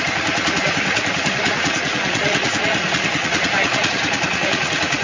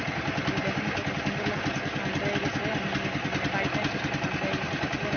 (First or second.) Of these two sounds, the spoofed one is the first